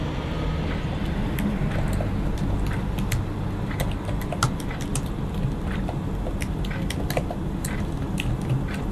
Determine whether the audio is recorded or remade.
recorded